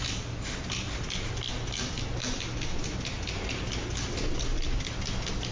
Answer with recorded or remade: recorded